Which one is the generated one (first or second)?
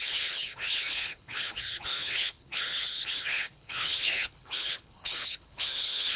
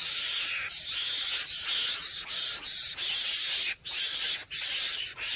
first